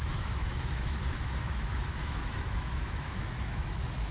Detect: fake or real fake